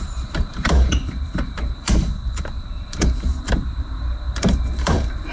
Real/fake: fake